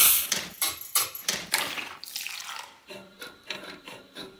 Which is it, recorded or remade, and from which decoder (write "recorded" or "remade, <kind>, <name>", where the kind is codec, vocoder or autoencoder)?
remade, vocoder, BigVGAN v2